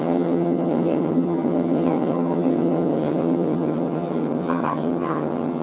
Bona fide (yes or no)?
no